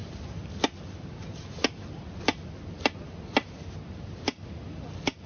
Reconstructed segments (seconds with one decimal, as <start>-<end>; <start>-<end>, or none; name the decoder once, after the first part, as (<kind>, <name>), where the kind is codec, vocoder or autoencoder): none